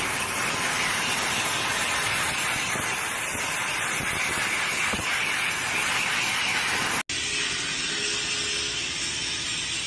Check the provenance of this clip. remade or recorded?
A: recorded